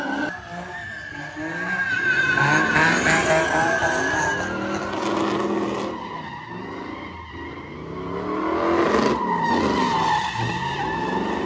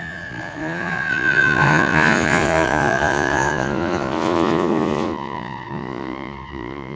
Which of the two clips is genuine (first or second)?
first